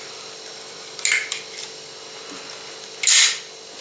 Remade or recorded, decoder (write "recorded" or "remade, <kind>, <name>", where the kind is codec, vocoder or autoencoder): recorded